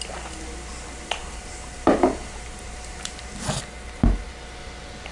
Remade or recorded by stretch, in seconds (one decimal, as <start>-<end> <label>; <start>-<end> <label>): 0.0-1.2 recorded; 1.2-3.3 remade; 3.3-5.1 recorded